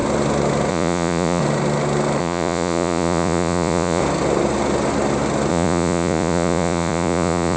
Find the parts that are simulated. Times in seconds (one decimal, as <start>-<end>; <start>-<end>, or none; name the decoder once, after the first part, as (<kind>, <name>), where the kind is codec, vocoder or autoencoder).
0.7-1.4 (vocoder, Vocos); 2.2-4.0; 5.5-7.6